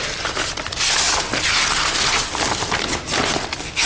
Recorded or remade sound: recorded